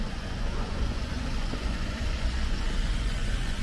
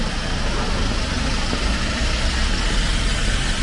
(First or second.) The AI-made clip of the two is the first